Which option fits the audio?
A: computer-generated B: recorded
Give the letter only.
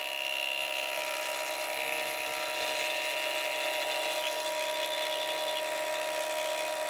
B